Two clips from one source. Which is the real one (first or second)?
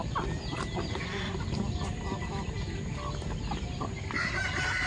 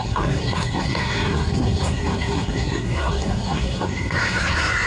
first